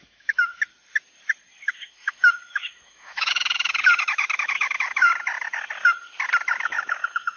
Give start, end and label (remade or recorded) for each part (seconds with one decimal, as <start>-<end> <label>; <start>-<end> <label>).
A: 0.0-0.5 remade; 0.5-1.5 recorded; 1.5-5.1 remade; 5.1-6.5 recorded; 6.5-7.4 remade